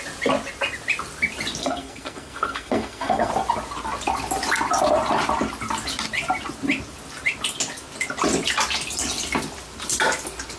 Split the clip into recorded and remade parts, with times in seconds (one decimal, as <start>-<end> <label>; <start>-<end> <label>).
0.0-1.6 recorded; 1.6-3.3 remade; 3.3-10.6 recorded